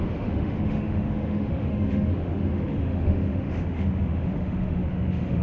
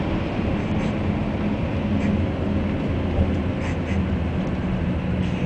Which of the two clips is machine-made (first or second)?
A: first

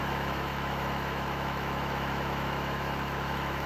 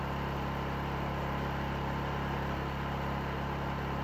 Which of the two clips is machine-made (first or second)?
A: first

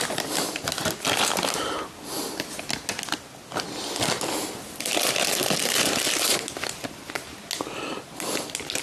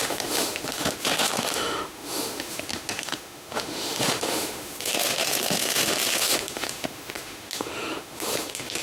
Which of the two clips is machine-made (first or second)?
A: second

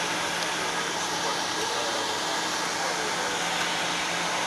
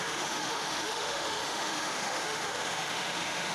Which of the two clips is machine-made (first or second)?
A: second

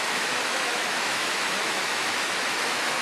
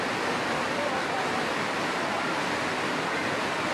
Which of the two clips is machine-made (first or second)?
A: first